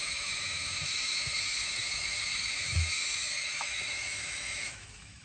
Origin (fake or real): fake